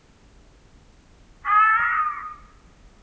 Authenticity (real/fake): real